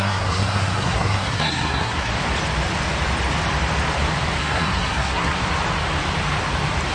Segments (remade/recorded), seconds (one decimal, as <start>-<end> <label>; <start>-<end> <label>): 0.0-2.1 remade; 2.1-4.4 recorded; 4.4-5.4 remade; 5.4-6.9 recorded